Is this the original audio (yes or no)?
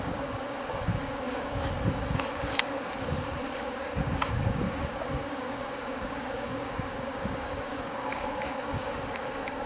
no